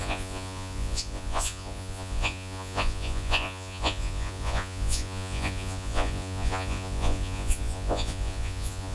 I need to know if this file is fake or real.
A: fake